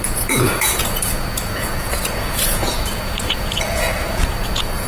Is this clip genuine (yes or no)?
no